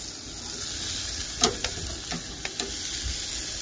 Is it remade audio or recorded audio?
recorded